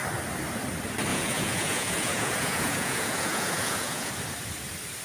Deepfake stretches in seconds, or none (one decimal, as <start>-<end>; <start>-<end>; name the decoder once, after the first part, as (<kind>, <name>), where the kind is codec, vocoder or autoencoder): 1.1-4.1 (vocoder, Vocos)